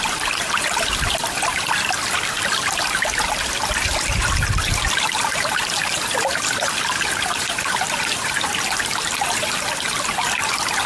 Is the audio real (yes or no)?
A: yes